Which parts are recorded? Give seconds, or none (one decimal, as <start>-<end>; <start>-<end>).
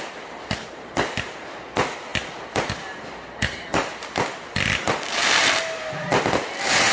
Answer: none